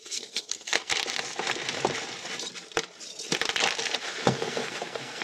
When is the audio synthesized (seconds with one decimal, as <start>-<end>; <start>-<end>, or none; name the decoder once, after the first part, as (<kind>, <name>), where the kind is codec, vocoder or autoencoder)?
0.0-0.9 (codec, SNAC); 4.0-5.2